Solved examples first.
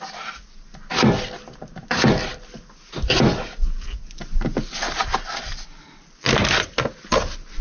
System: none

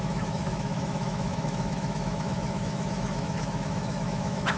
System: autoencoder, DAC-VAE